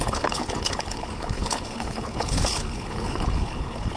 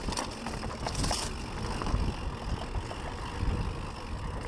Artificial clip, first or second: first